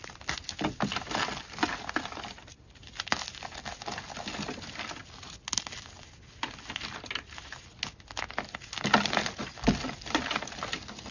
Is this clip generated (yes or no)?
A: no